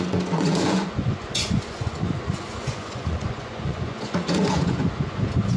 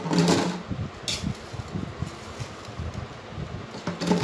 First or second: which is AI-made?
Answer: first